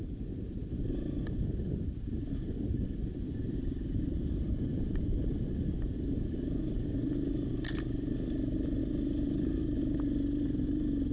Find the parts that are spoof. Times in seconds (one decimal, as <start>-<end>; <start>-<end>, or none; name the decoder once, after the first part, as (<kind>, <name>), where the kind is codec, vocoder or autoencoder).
2.7-7.5 (vocoder, BigVGAN v2); 8.8-9.8